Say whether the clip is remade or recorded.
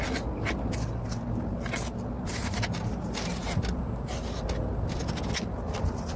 recorded